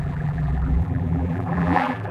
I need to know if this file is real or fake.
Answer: fake